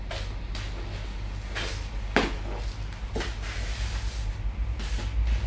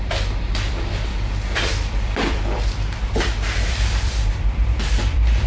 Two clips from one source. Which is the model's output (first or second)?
second